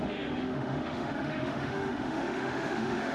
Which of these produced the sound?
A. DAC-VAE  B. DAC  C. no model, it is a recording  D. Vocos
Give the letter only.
A